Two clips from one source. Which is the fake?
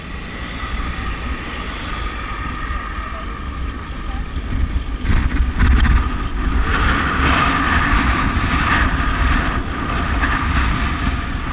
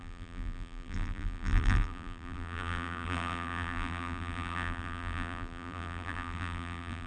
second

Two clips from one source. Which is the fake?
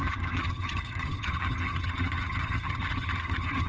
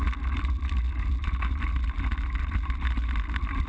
first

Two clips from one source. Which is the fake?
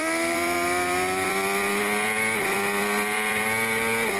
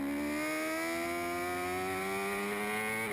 first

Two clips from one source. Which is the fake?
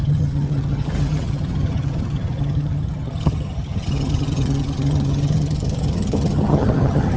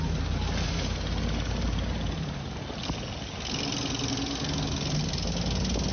first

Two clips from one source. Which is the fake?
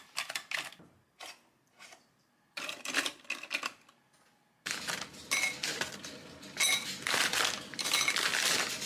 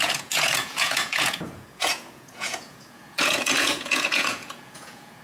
second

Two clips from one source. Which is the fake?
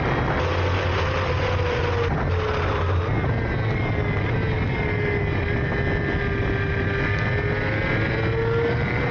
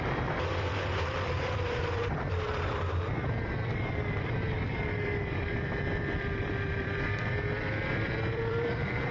second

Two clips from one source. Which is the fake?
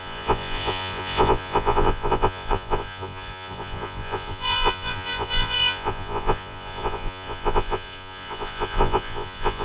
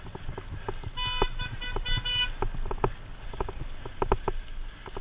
first